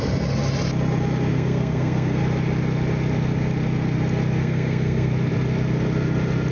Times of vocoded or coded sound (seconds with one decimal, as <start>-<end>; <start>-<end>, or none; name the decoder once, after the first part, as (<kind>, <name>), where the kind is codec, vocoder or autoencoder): 1.3-2.2 (codec, SNAC); 4.4-5.1